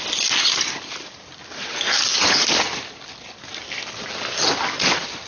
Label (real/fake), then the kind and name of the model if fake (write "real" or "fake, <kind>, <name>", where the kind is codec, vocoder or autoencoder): real